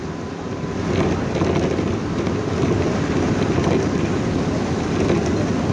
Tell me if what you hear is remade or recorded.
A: recorded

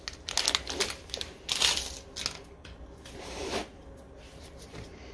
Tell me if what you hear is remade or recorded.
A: recorded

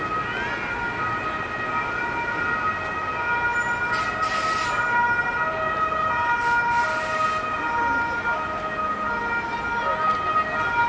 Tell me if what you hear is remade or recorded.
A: recorded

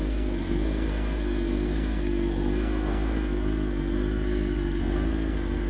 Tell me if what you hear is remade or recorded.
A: remade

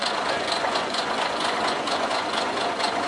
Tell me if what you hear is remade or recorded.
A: remade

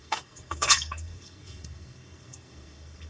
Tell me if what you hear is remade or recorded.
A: remade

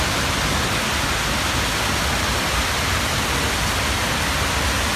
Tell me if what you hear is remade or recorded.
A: recorded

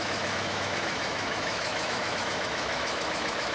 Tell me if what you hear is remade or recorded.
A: remade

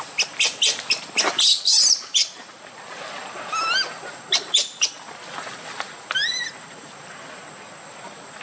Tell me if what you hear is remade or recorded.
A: recorded